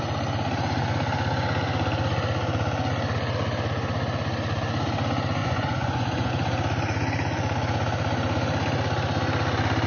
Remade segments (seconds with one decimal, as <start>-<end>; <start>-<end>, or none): 5.4-6.3

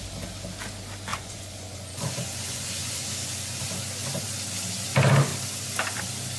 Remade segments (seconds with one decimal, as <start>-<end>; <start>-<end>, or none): 1.1-3.6

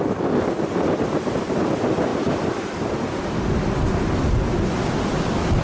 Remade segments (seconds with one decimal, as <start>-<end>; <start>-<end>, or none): none

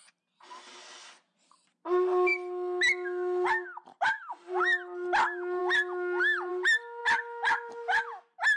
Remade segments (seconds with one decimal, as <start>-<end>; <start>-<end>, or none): none

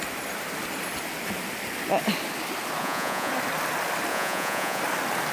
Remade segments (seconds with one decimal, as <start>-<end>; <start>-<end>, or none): 2.8-3.3; 4.1-4.8

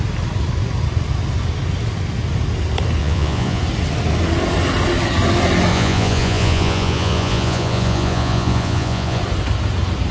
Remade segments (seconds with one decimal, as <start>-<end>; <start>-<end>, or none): 3.0-3.6; 5.7-9.2

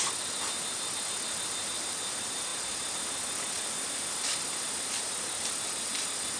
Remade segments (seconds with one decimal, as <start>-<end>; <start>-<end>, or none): none

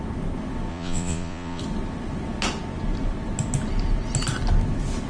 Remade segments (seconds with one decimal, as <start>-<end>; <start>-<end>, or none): 0.7-1.6